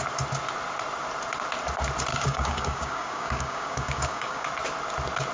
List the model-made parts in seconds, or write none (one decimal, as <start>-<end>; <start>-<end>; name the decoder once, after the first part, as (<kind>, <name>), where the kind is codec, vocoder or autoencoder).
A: 2.1-4.5 (codec, DAC)